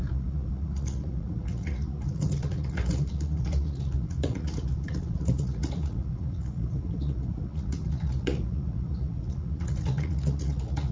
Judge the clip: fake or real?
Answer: fake